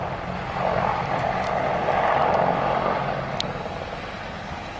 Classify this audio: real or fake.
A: real